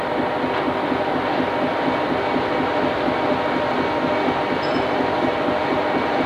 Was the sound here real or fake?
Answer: real